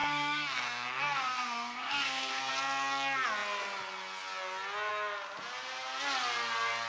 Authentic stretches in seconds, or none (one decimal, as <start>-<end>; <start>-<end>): 2.5-6.9